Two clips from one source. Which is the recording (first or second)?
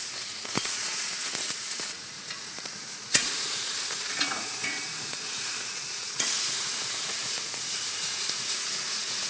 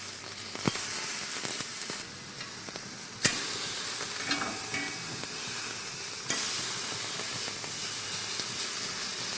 second